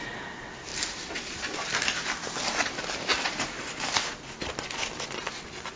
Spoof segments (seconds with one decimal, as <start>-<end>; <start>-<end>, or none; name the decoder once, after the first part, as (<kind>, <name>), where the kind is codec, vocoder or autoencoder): 0.7-4.2 (vocoder, BigVGAN v2)